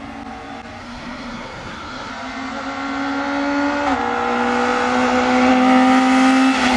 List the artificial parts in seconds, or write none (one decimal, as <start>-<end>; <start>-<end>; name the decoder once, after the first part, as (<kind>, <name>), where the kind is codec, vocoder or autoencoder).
0.8-2.1 (codec, SNAC)